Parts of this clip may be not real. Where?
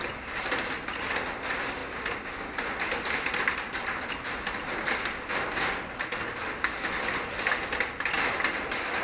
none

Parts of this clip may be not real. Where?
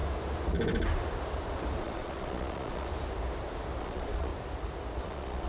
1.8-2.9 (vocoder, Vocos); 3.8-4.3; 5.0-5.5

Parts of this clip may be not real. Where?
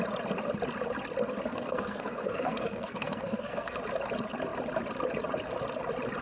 1.5-3.8 (codec, SNAC)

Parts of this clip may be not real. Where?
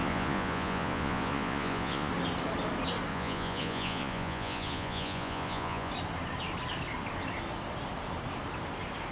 0.0-2.1 (vocoder, Vocos); 3.1-5.9